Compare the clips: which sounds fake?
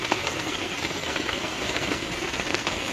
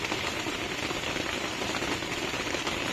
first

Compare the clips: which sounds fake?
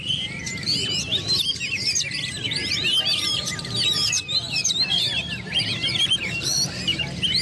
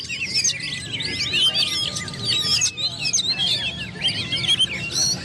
first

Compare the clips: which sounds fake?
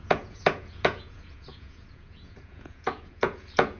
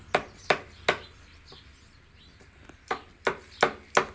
first